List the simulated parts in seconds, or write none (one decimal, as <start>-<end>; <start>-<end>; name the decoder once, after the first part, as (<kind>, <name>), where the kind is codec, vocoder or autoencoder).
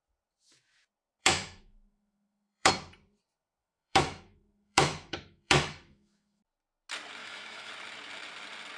1.2-2.7 (autoencoder, DAC-VAE); 3.6-6.4; 7.2-7.7